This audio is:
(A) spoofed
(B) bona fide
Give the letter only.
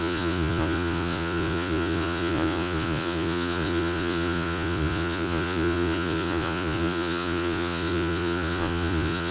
A